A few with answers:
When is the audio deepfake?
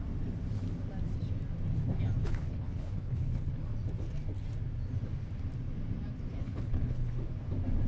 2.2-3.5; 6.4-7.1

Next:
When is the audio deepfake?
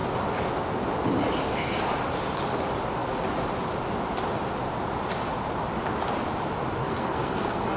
6.8-7.8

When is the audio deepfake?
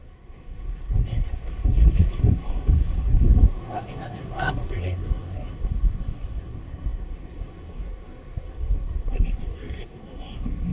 0.0-10.7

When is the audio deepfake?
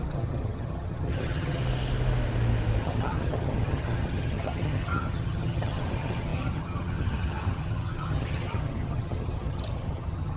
0.0-1.6; 2.8-10.4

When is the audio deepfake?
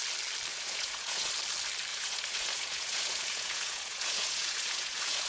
0.5-1.3; 1.9-5.3